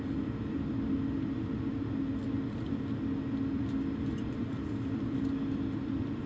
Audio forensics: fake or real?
real